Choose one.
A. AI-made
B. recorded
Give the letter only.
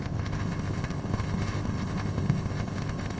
A